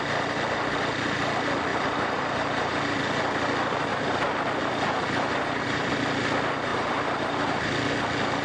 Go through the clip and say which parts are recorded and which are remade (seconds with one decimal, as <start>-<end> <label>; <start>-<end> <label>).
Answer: 0.0-1.7 recorded; 1.7-3.0 remade; 3.0-3.9 recorded; 3.9-5.9 remade; 5.9-6.7 recorded; 6.7-7.6 remade; 7.6-8.4 recorded